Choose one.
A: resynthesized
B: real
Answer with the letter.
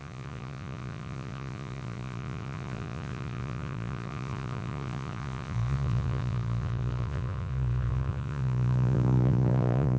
A